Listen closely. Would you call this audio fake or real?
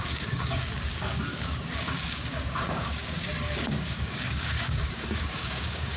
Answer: fake